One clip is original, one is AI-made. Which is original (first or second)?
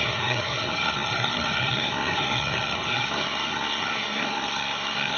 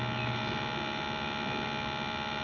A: second